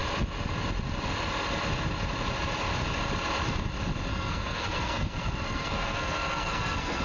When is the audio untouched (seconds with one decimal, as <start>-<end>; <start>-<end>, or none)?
0.0-4.1